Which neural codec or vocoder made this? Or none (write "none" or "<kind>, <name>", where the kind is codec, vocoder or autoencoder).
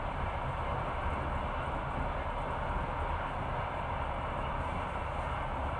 none